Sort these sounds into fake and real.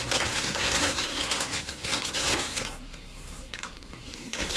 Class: fake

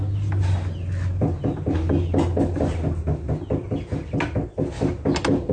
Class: real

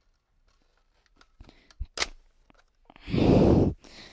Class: real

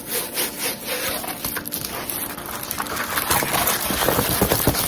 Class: real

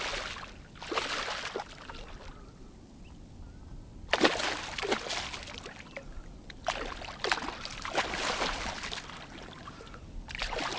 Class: real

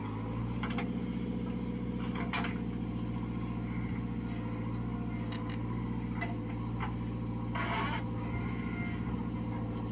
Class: real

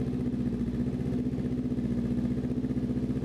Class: real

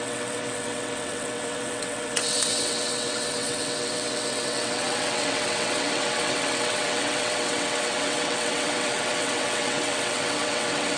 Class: fake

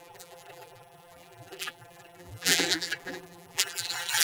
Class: fake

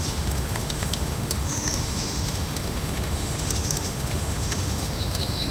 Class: fake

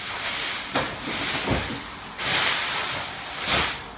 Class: real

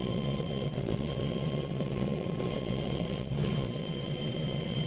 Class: fake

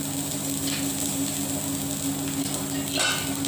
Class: real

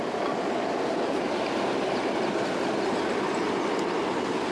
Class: real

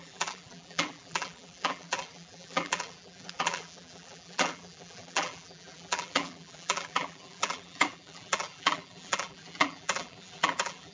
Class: fake